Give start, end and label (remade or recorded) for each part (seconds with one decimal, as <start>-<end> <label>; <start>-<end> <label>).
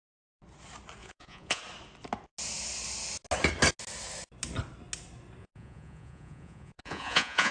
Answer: 0.0-1.0 recorded; 1.0-1.6 remade; 1.6-5.4 recorded; 5.4-7.5 remade